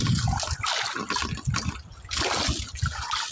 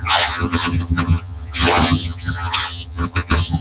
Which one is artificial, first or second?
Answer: second